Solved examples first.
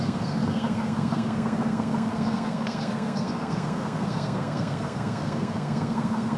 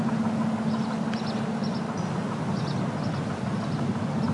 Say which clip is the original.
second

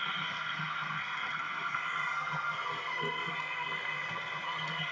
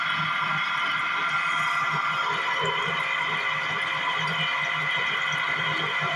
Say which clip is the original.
second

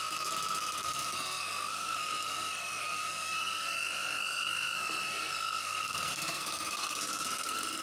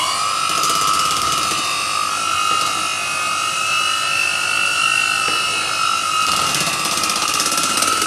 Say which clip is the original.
second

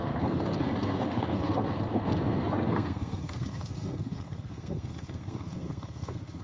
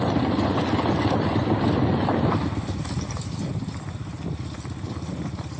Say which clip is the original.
second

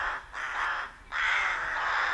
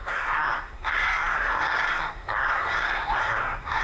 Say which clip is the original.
first